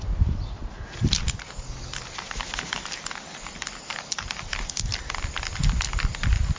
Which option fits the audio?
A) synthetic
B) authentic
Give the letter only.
B